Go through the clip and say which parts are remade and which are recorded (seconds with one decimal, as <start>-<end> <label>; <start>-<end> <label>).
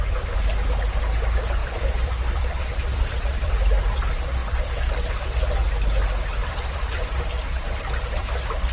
0.0-1.6 recorded; 1.6-3.5 remade; 3.5-4.4 recorded; 4.4-4.9 remade; 4.9-6.4 recorded; 6.4-7.3 remade; 7.3-8.7 recorded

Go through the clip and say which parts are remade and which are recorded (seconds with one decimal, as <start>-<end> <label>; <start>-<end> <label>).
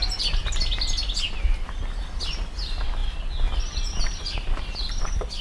0.0-5.4 recorded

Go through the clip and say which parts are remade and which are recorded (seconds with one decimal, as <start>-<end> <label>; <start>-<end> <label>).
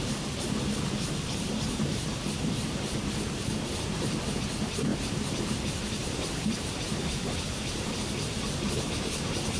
0.0-9.6 remade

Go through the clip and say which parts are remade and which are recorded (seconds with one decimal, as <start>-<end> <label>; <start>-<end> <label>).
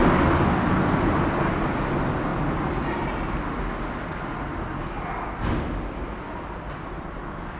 0.0-7.6 recorded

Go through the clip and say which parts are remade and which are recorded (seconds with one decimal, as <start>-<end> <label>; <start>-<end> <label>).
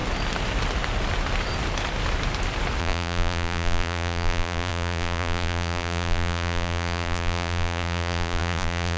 0.0-2.8 recorded; 2.8-9.0 remade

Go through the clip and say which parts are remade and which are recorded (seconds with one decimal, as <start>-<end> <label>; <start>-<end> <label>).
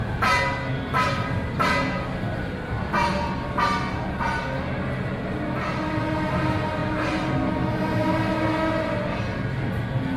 0.0-10.2 recorded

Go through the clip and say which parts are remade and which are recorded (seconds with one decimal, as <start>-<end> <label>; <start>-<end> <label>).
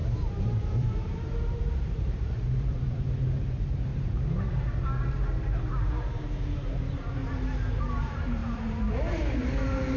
0.0-3.9 remade; 3.9-5.1 recorded; 5.1-7.2 remade; 7.2-7.8 recorded; 7.8-10.0 remade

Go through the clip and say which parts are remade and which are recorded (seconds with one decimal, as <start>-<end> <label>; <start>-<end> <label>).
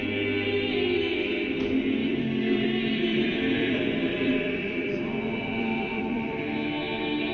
0.0-2.0 recorded; 2.0-6.4 remade; 6.4-7.3 recorded